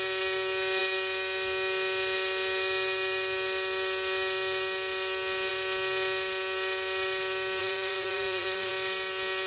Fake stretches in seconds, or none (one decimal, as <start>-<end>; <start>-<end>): 7.6-8.7